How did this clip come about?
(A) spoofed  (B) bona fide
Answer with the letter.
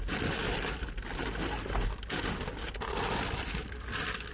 B